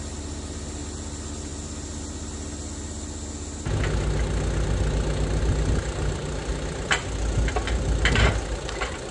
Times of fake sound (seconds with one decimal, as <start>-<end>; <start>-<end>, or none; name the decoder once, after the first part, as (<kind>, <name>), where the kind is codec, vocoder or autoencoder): none